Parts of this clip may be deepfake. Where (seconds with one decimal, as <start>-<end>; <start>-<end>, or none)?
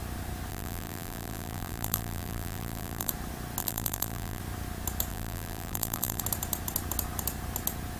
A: 0.5-3.1; 3.6-4.4; 5.1-6.2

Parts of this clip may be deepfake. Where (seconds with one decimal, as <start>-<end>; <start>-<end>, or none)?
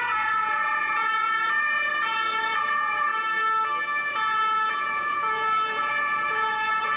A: 0.0-3.1; 4.1-7.0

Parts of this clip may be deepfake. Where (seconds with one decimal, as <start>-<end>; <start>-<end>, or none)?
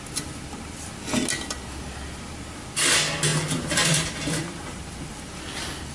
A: 3.3-4.8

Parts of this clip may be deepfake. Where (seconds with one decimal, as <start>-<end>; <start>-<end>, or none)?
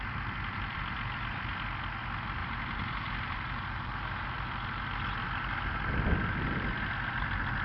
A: 2.4-4.0